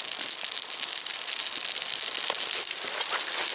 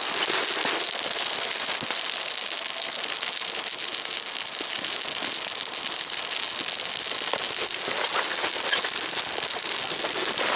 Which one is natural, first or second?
second